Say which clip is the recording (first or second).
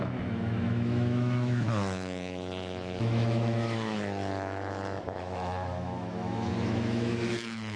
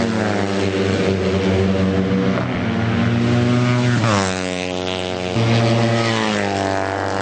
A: second